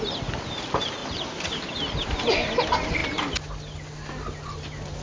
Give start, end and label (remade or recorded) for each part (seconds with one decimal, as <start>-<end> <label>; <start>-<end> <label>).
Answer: 0.0-5.0 recorded